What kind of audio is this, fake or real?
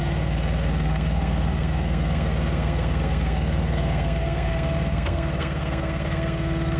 fake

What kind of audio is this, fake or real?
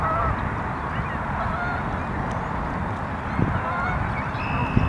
real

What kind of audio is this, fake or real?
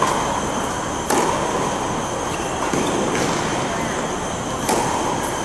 real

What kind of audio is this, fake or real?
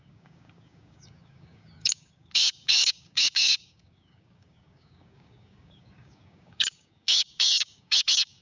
fake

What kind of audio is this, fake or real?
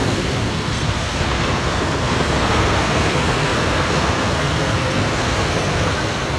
fake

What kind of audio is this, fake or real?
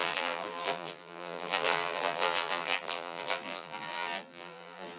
fake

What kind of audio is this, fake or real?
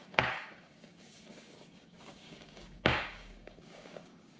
fake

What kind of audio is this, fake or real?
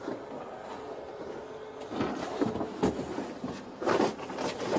real